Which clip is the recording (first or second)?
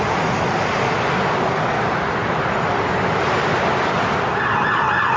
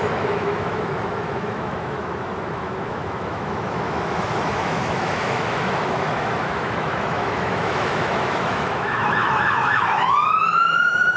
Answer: first